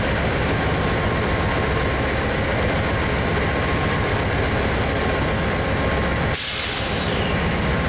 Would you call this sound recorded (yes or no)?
yes